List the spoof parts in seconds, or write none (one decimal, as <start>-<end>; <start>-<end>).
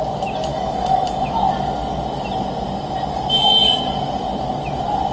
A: 0.5-1.3